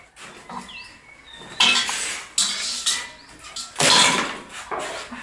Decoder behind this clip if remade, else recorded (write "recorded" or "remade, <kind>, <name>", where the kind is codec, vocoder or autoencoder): recorded